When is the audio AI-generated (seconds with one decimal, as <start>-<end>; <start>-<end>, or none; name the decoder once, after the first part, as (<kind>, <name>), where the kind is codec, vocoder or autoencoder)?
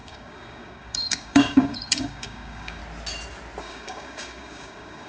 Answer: 0.0-2.8 (codec, DAC); 3.6-5.1